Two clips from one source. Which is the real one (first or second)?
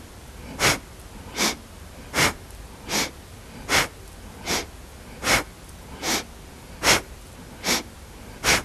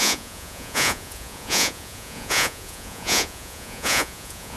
first